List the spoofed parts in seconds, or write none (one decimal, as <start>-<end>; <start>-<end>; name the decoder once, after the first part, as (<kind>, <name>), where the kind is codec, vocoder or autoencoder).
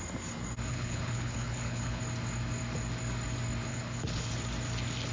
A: 0.7-2.0 (codec, HILCodec); 3.7-4.3